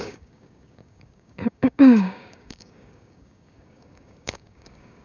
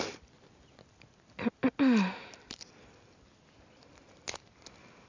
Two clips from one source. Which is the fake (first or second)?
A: first